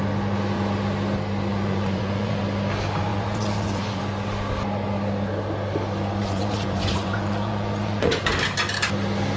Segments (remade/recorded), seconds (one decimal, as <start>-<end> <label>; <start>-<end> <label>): 0.0-1.5 recorded; 1.5-2.4 remade; 2.4-3.1 recorded; 3.1-4.0 remade; 4.0-6.2 recorded; 6.2-8.2 remade; 8.2-9.4 recorded